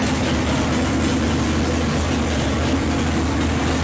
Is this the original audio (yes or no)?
yes